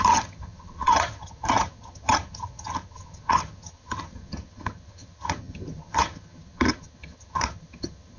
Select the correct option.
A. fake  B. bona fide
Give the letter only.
A